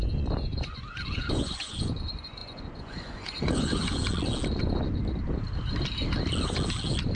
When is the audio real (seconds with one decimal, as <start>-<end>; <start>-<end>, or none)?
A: 4.0-4.6; 5.0-7.2